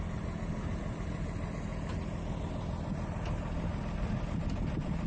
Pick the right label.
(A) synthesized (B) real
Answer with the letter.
B